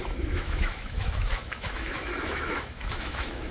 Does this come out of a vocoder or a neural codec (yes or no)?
yes